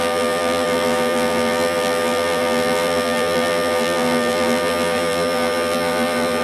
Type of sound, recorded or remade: remade